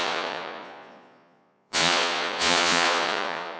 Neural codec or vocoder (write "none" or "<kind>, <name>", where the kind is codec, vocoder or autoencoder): vocoder, Vocos